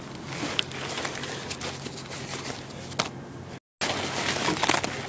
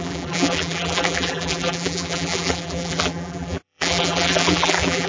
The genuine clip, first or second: first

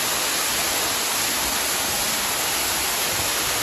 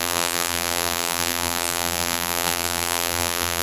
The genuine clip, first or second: first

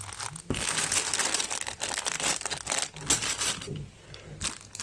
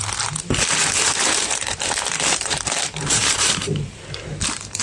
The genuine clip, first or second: first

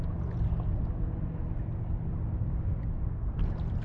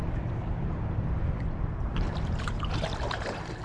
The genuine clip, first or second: first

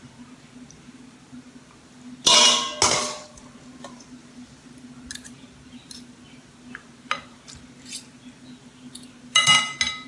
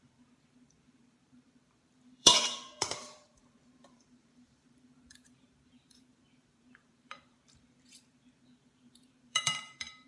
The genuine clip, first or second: first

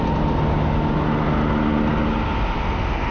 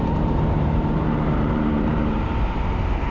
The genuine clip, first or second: first